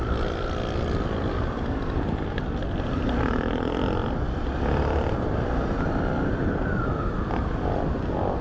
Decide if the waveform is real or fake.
real